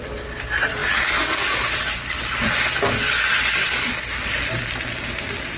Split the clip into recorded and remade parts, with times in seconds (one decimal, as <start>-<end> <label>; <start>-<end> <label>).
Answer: 0.0-5.6 recorded